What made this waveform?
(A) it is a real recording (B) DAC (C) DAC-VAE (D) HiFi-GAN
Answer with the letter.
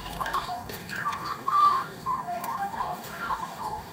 B